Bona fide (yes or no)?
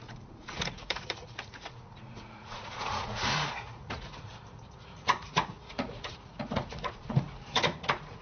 no